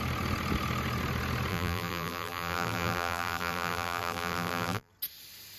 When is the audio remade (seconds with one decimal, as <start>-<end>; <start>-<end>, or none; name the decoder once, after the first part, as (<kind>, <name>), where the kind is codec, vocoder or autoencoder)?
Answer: 1.5-4.9 (vocoder, BigVGAN v2)